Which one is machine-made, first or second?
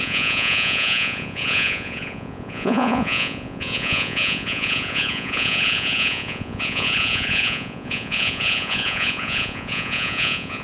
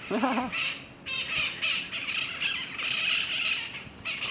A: first